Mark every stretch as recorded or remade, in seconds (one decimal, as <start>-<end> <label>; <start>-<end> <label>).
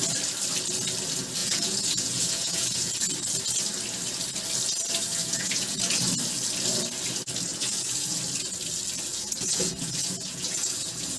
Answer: 0.0-1.4 recorded; 1.4-3.1 remade; 3.1-5.2 recorded; 5.2-6.0 remade; 6.0-7.5 recorded; 7.5-8.2 remade; 8.2-9.1 recorded; 9.1-11.2 remade